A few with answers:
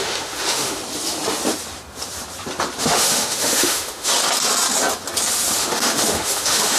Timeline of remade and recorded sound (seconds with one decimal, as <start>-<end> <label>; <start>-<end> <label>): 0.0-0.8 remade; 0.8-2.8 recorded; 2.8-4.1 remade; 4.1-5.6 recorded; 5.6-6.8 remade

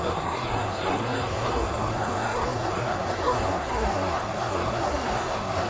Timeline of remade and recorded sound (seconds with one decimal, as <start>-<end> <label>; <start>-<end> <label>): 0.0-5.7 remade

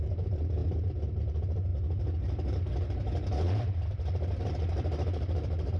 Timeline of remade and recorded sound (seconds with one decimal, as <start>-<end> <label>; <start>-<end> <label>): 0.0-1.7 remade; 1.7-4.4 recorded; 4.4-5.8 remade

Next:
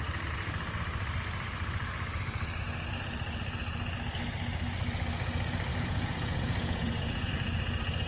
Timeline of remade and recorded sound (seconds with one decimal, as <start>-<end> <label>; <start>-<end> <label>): 0.0-5.7 recorded; 5.7-7.3 remade; 7.3-8.1 recorded

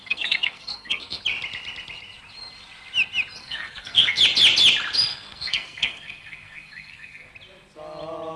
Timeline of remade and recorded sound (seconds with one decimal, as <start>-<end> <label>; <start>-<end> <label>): 0.0-1.2 remade; 1.2-3.4 recorded; 3.4-4.2 remade; 4.2-5.1 recorded; 5.1-7.3 remade; 7.3-8.4 recorded

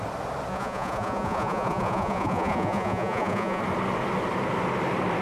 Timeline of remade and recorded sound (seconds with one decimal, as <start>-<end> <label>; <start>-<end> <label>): 0.0-0.5 recorded; 0.5-3.6 remade; 3.6-5.2 recorded

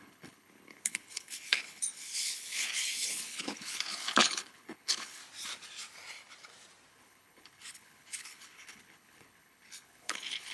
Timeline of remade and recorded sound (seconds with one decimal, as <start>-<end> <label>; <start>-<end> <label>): 0.0-5.2 remade; 5.2-6.9 recorded; 6.9-10.5 remade

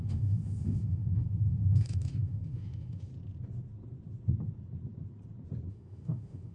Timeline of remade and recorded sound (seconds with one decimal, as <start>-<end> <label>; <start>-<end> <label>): 0.0-3.1 remade; 3.1-5.7 recorded; 5.7-6.5 remade